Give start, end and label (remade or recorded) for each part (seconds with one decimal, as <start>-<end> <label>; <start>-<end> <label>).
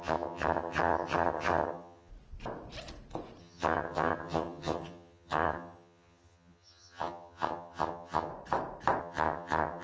0.0-2.1 remade; 2.1-3.4 recorded; 3.4-8.3 remade; 8.3-9.0 recorded; 9.0-9.8 remade